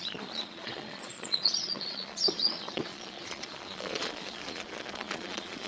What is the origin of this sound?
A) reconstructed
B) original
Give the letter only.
A